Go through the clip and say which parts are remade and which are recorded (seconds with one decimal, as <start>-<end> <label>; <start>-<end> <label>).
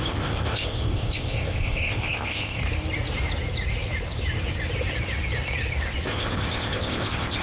0.0-2.6 remade; 2.6-6.1 recorded; 6.1-7.4 remade